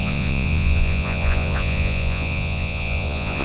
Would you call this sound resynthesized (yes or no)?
yes